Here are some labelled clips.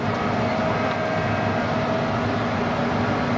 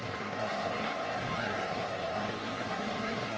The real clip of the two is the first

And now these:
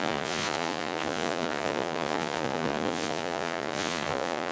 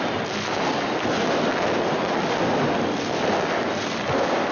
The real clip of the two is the second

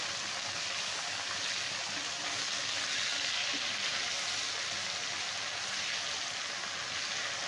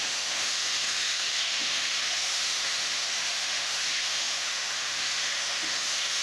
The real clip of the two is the first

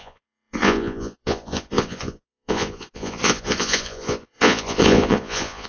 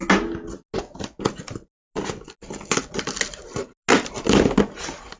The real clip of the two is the second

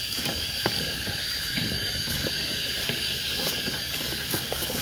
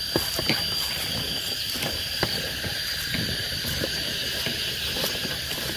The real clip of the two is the second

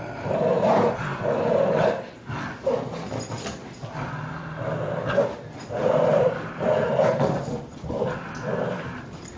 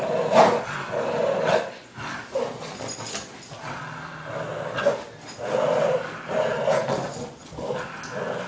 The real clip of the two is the second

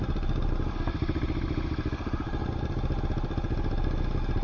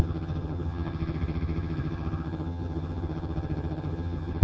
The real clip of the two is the first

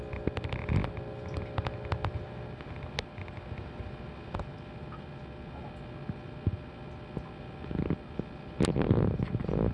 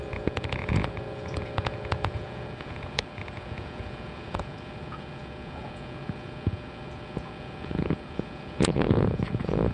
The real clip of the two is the first